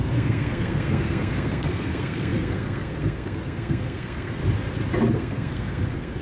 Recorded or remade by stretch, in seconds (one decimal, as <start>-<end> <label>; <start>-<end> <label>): 0.0-4.4 remade; 4.4-5.1 recorded; 5.1-6.2 remade